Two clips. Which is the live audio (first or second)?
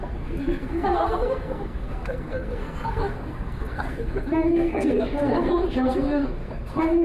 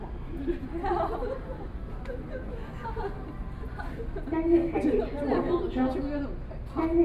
second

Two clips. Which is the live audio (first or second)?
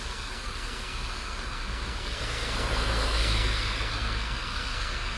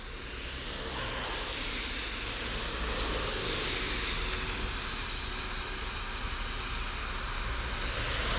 second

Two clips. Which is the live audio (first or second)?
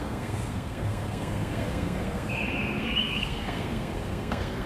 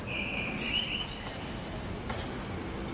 second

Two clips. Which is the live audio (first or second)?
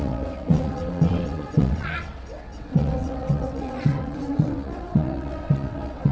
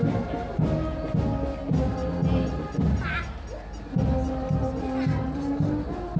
second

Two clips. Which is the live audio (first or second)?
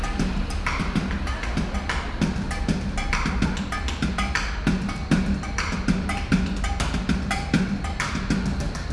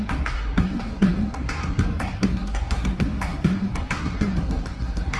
first